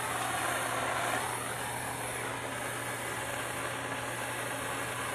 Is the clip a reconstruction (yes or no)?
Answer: no